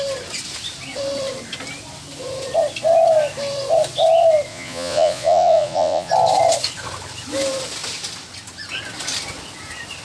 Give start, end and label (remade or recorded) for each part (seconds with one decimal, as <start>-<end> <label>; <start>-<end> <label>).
0.0-4.5 recorded; 4.5-6.1 remade; 6.1-10.0 recorded